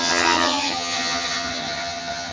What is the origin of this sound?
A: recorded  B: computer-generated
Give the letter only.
B